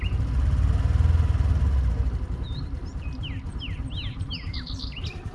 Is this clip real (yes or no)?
yes